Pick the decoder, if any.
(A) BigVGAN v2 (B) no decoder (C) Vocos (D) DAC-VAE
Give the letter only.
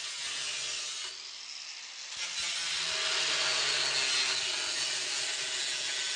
B